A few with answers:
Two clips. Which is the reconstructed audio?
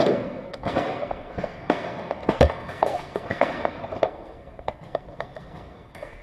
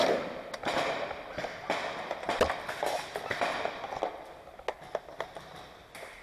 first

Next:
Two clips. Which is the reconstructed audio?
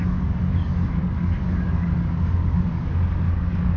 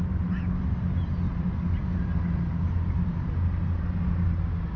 first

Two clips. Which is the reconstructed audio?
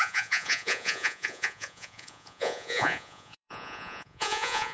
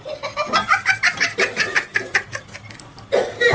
first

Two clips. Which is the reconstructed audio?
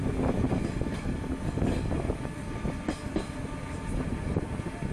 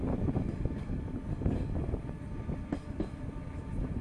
second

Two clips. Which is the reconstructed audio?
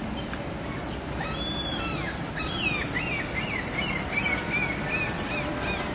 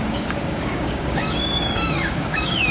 second